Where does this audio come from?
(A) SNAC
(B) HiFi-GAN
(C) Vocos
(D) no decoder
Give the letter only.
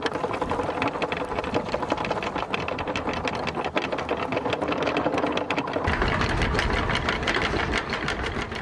D